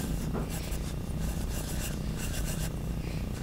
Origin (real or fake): real